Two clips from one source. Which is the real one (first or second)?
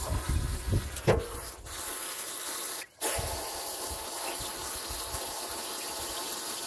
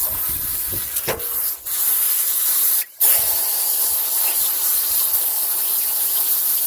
first